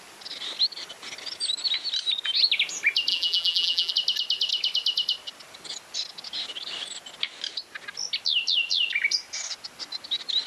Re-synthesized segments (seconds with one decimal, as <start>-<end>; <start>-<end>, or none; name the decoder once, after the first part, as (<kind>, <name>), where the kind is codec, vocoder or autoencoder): 3.1-3.9 (vocoder, BigVGAN v2)